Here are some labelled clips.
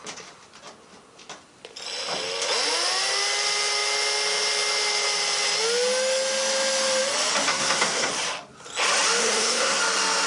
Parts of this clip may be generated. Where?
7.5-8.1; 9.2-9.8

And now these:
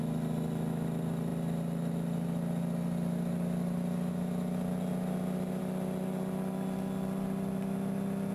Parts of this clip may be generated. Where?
none

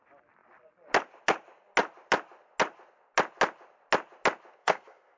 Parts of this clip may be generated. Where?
4.6-5.2

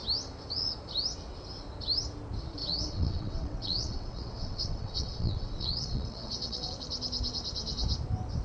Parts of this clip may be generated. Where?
2.6-6.7

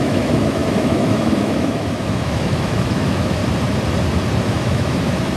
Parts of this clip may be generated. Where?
0.0-3.4; 4.5-5.4

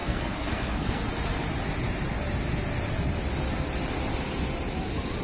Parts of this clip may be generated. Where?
0.0-1.0